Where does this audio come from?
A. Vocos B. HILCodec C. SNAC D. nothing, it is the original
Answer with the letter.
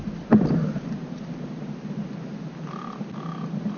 D